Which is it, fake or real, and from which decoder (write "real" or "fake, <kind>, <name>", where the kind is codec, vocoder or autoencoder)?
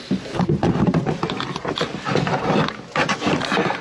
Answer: real